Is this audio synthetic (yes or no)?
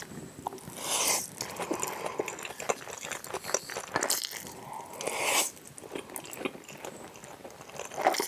no